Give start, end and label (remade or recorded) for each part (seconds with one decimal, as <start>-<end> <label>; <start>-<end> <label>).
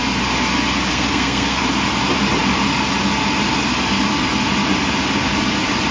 0.0-0.9 recorded; 0.9-1.6 remade; 1.6-5.9 recorded